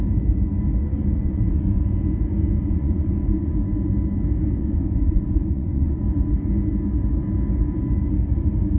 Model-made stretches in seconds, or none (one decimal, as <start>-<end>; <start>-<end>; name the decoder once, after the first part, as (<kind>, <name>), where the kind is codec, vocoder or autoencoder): 0.8-1.8 (vocoder, Vocos); 2.6-3.5; 4.6-6.0